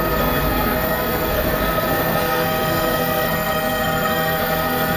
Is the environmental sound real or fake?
fake